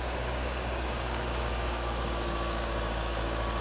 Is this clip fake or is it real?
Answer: fake